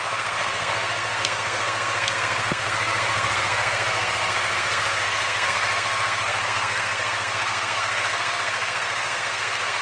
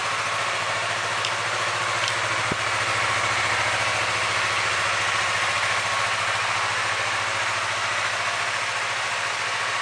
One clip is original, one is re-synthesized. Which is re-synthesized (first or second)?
first